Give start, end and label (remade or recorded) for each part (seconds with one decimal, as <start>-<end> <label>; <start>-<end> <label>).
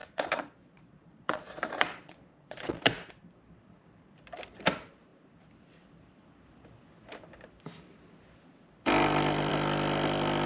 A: 0.0-2.8 remade; 2.8-10.5 recorded